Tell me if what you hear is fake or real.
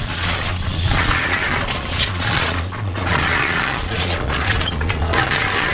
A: fake